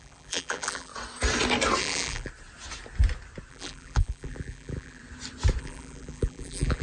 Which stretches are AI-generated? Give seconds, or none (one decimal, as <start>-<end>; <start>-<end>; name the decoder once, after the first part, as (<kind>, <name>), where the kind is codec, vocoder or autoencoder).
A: 0.0-0.9 (vocoder, BigVGAN v2); 1.8-2.3; 3.5-5.0; 5.6-6.8